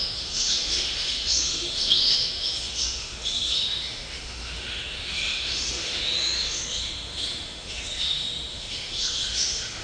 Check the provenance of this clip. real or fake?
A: fake